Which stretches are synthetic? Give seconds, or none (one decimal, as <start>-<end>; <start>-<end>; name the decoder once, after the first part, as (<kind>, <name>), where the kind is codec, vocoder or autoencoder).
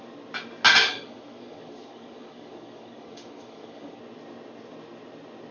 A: 0.7-4.0 (codec, DAC)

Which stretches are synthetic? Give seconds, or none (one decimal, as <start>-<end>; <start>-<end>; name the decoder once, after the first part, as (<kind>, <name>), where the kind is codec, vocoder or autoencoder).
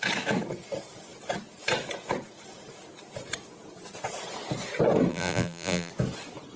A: 5.1-5.9 (vocoder, BigVGAN v2)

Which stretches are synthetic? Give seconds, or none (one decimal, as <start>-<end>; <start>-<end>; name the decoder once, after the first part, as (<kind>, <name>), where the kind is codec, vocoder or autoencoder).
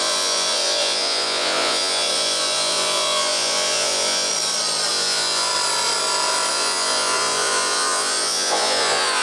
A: 0.0-4.3 (vocoder, Vocos); 4.9-5.5; 6.5-9.2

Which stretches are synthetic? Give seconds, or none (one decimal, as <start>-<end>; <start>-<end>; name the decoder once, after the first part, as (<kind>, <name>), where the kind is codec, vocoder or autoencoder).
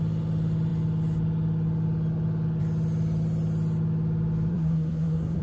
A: 4.5-5.4 (codec, SNAC)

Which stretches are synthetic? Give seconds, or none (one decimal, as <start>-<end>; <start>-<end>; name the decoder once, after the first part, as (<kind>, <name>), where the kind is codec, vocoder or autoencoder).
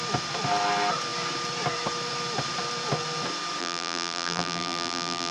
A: 3.6-5.3 (vocoder, BigVGAN v2)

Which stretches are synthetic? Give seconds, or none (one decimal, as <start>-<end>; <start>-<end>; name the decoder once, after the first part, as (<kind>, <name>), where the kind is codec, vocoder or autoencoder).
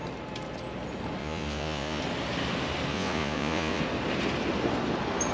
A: 1.2-2.0 (vocoder, Vocos); 2.9-3.8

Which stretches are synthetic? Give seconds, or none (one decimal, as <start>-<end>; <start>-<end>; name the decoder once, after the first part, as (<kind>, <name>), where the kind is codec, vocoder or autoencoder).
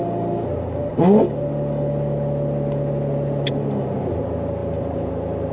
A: none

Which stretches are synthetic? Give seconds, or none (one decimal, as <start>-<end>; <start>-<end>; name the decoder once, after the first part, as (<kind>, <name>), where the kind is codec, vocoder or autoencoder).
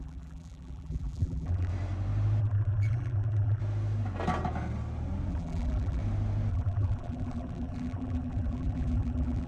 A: 0.0-1.7 (vocoder, BigVGAN v2); 2.4-3.6; 5.3-6.0; 6.5-9.5